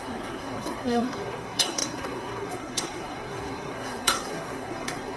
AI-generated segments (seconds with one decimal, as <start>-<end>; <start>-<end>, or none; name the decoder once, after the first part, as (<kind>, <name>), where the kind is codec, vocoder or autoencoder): 0.0-5.2 (codec, SNAC)